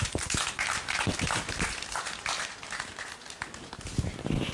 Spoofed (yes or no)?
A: no